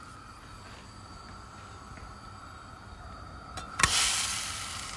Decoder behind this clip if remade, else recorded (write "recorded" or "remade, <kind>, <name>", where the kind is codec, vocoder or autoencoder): recorded